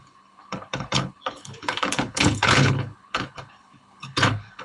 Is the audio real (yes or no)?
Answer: no